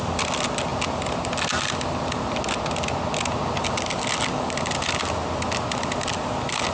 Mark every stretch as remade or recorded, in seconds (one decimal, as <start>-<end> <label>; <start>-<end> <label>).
0.0-6.7 recorded